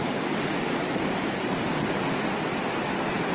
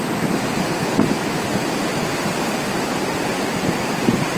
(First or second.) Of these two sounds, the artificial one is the first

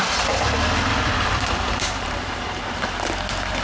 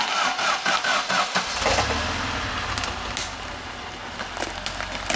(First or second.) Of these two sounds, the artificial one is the first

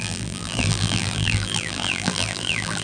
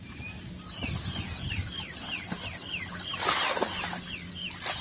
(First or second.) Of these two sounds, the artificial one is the first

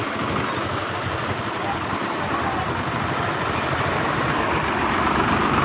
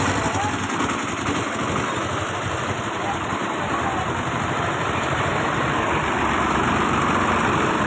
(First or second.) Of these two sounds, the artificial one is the first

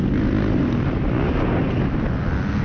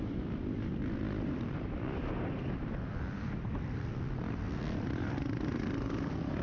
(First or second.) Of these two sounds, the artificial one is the second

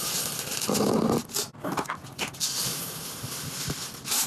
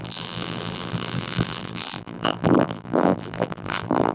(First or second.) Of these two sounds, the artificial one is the second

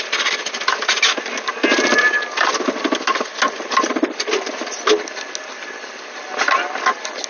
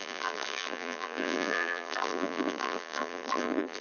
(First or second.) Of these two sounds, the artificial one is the second